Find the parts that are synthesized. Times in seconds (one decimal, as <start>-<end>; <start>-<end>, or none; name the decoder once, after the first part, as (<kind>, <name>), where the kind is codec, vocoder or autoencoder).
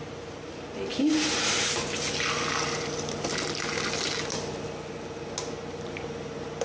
none